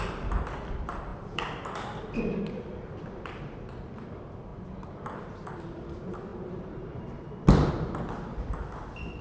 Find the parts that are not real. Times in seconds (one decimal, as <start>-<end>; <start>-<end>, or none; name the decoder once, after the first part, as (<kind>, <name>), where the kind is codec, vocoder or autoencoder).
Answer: 1.1-3.9 (vocoder, BigVGAN v2); 6.3-7.7